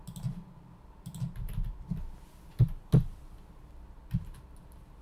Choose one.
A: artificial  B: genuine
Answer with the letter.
B